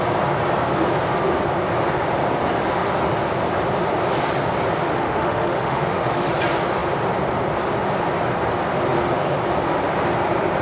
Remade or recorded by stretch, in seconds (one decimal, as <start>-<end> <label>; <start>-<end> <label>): 0.0-4.9 recorded; 4.9-6.3 remade; 6.3-10.6 recorded